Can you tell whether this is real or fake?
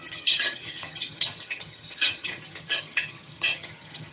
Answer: fake